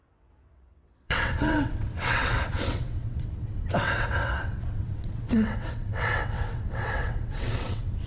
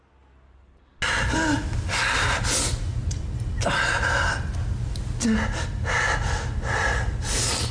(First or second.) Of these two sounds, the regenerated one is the first